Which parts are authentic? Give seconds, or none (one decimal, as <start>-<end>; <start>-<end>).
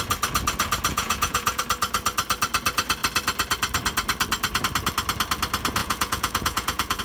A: 0.0-0.9; 1.6-5.8